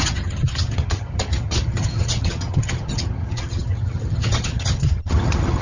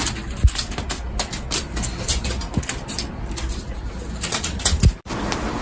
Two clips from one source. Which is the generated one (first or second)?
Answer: first